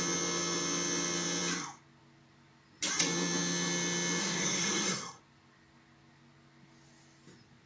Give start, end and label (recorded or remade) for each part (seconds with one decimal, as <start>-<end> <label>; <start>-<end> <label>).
0.0-4.2 recorded; 4.2-5.2 remade; 5.2-7.7 recorded